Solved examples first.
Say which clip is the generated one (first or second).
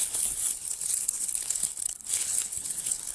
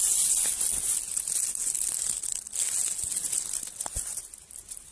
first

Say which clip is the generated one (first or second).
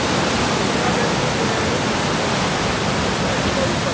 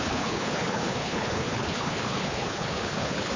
second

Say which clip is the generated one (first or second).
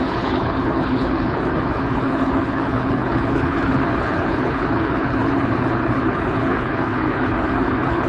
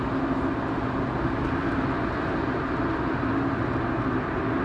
first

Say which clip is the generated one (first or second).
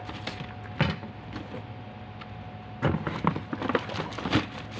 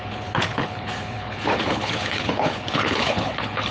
second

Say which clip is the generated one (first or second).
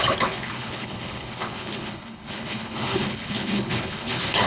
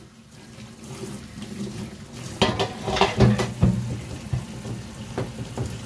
first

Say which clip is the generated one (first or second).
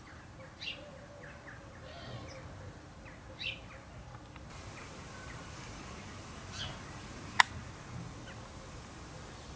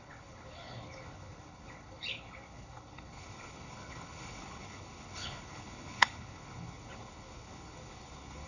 second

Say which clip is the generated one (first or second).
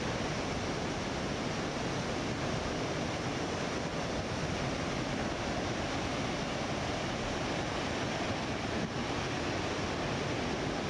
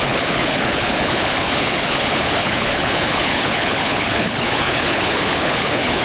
second